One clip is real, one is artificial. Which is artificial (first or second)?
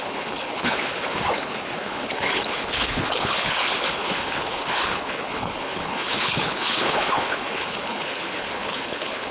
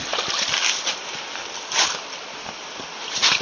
first